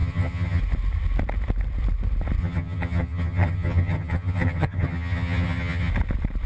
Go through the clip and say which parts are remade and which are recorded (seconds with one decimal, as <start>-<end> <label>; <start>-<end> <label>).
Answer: 0.0-0.6 remade; 0.6-2.4 recorded; 2.4-5.9 remade; 5.9-6.5 recorded